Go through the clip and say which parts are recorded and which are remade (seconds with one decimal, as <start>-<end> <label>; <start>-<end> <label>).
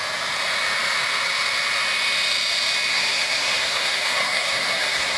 0.0-2.9 recorded; 2.9-5.2 remade